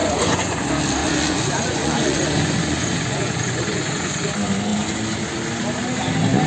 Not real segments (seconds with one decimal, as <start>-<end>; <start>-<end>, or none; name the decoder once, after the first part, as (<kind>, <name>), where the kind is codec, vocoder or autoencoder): 0.0-0.6 (vocoder, Vocos); 1.0-4.3